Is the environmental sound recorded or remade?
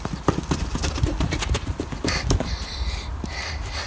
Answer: recorded